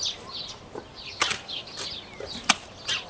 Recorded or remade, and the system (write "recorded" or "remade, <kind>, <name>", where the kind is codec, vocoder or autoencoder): recorded